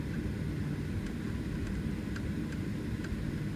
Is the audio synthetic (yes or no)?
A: no